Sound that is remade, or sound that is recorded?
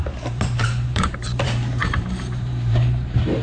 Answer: remade